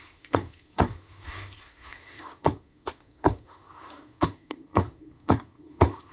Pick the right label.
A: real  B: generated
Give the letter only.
B